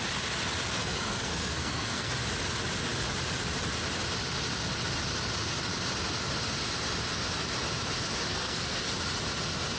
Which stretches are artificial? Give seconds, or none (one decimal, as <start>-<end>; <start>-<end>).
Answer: 0.8-2.1; 8.3-8.8